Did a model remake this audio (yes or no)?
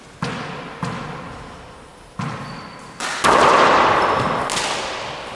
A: no